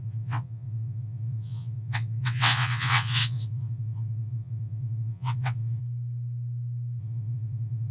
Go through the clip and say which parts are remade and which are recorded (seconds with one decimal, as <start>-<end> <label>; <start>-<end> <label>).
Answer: 0.0-5.8 remade; 5.8-7.0 recorded; 7.0-7.9 remade